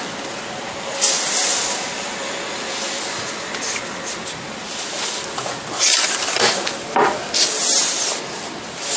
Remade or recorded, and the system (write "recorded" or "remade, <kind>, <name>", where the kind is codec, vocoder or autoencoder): recorded